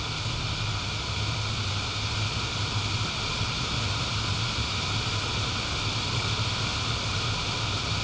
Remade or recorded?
recorded